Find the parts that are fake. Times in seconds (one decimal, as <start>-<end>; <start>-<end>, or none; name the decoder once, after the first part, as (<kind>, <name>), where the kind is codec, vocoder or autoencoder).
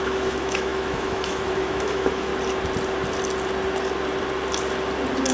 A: 0.0-2.3 (autoencoder, DAC-VAE)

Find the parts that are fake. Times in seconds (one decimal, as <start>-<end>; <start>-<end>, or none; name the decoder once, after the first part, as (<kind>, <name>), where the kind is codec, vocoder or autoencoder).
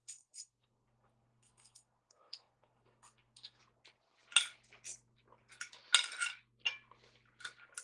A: 0.0-3.6 (codec, SNAC)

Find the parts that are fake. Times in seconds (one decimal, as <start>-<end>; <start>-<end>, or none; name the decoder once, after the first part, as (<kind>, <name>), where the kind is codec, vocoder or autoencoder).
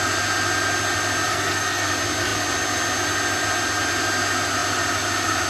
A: 1.3-1.9 (codec, SNAC)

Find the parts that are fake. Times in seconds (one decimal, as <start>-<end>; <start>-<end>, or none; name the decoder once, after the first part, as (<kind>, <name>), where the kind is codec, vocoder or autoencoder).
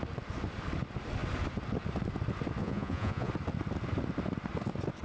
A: 2.6-3.3 (vocoder, Vocos)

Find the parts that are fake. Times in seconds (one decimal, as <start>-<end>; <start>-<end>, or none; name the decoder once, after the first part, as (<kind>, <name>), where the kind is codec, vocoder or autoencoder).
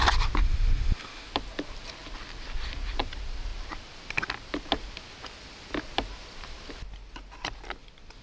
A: 0.4-1.3 (autoencoder, DAC-VAE)